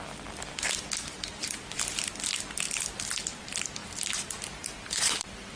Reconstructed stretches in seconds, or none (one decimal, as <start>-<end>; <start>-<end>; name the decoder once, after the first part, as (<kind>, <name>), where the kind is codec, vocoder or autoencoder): none